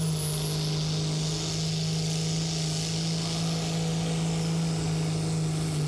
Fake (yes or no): no